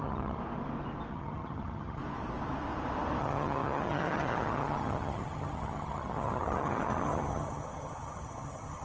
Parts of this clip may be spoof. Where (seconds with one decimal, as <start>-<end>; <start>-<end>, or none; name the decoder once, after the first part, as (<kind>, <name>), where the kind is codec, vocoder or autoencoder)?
0.0-0.4 (vocoder, HiFi-GAN); 1.1-2.0; 3.2-8.8